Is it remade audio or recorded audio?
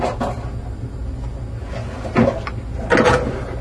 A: recorded